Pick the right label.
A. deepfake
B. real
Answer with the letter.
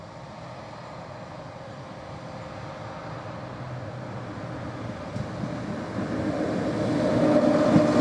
B